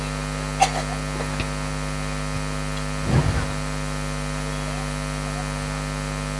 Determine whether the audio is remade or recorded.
recorded